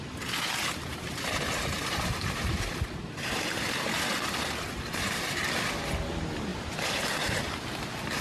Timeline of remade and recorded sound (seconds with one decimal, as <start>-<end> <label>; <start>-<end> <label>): 0.0-0.9 recorded; 0.9-5.6 remade; 5.6-6.5 recorded; 6.5-7.4 remade; 7.4-8.2 recorded